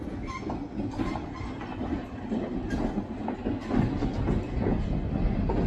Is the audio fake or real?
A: real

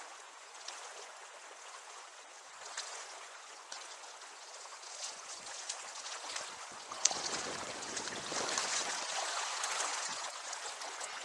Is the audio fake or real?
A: fake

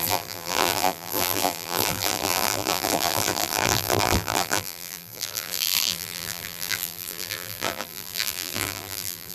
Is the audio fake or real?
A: fake